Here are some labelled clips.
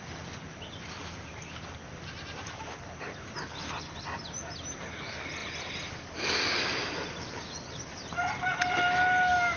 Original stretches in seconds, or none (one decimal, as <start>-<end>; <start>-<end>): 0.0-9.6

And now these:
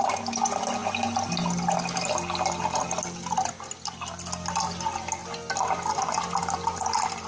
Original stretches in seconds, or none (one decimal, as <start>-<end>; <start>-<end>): 0.0-7.3

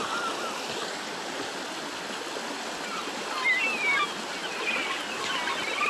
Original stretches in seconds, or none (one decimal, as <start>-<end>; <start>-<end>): 0.0-4.4; 5.3-5.9